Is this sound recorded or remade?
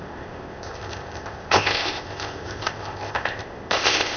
remade